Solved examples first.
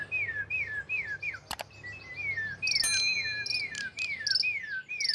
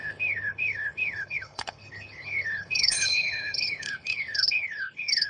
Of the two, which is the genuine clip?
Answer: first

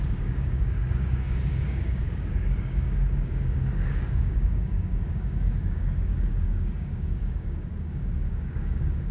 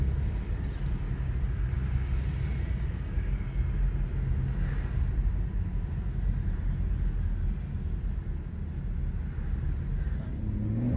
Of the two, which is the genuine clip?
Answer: second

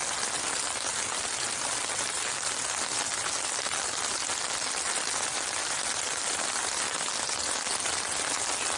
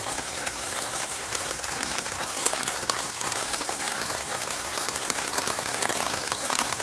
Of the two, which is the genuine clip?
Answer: first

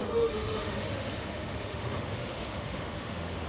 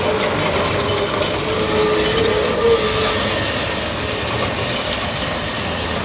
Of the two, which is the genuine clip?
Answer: second